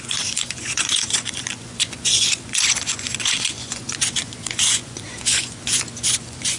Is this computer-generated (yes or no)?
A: yes